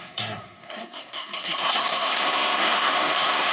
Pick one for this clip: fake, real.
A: fake